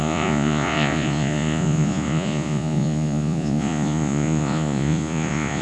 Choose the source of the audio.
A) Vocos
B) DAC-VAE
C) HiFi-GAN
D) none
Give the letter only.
A